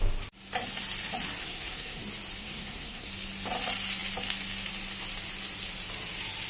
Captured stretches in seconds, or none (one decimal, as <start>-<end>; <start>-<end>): 0.0-1.4; 2.0-2.4; 3.1-6.5